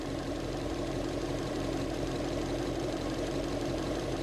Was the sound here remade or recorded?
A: remade